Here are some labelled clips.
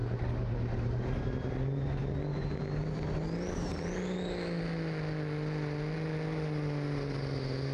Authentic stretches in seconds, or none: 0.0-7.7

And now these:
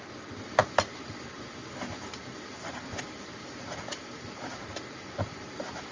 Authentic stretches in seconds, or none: 0.0-5.9

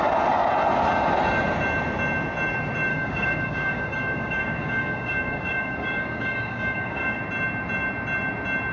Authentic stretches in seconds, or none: 0.0-2.9; 7.2-8.7

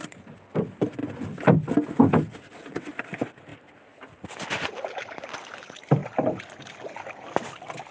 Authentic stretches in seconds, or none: 0.0-7.9